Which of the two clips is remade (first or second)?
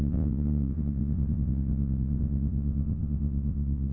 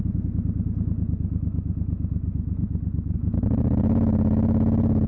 first